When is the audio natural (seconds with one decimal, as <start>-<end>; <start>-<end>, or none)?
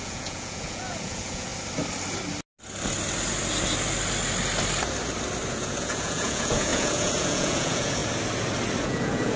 1.5-5.5; 8.0-8.8